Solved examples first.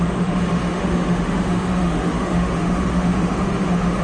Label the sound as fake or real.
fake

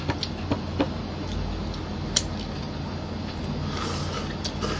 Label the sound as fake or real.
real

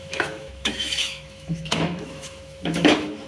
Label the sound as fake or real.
fake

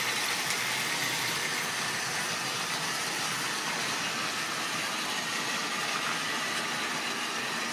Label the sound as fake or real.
real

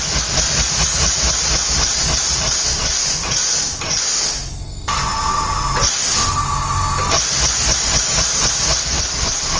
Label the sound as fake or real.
real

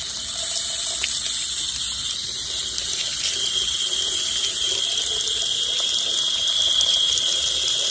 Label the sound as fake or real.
real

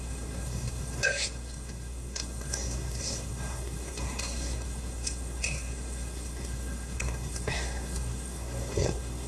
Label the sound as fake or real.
fake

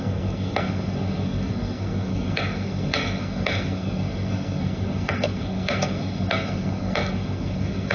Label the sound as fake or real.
fake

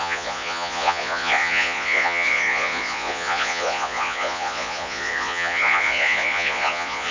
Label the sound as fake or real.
fake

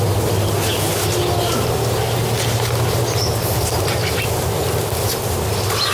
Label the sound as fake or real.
real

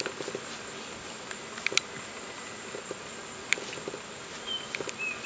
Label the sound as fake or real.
real